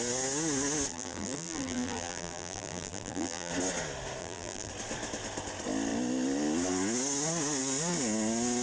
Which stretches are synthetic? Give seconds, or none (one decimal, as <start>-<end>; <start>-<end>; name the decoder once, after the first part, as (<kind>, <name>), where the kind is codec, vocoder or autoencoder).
0.9-3.5 (vocoder, BigVGAN v2); 4.2-4.7